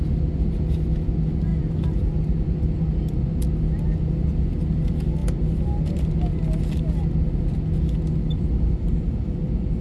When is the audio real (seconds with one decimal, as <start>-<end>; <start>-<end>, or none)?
0.0-9.8